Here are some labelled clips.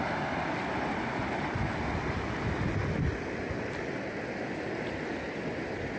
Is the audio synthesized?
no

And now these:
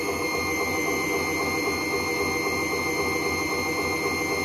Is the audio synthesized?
no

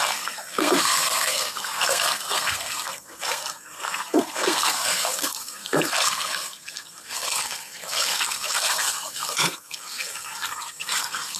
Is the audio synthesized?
yes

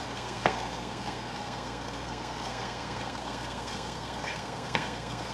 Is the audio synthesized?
yes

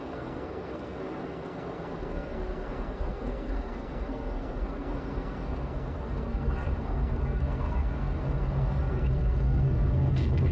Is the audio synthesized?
yes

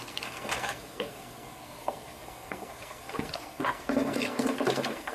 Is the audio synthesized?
yes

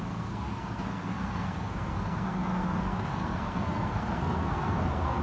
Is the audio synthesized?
yes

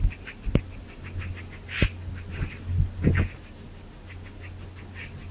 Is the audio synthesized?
no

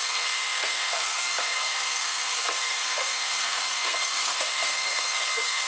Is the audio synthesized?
yes